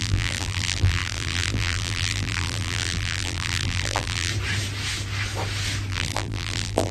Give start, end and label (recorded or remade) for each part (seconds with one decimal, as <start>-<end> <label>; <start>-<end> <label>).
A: 0.0-4.3 remade; 4.3-5.9 recorded; 5.9-6.9 remade